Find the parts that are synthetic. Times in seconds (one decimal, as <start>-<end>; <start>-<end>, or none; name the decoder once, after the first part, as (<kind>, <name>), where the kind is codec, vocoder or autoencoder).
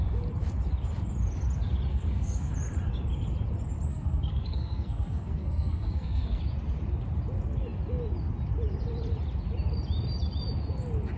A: 1.9-2.5 (codec, SNAC); 3.9-6.4